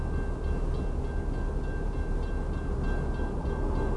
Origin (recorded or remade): recorded